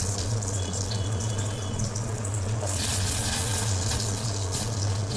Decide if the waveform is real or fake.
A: fake